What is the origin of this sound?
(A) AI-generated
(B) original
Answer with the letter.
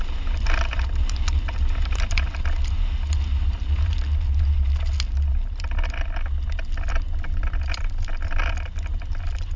B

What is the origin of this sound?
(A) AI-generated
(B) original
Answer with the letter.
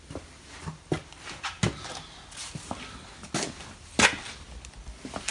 B